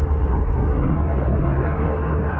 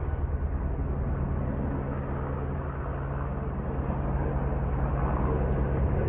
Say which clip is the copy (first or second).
first